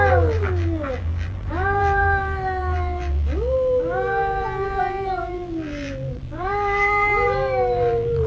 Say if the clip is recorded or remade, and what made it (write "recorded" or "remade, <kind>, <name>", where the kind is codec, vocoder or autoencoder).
remade, vocoder, BigVGAN v2